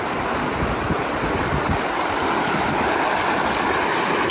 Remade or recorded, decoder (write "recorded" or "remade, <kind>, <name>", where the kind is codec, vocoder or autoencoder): recorded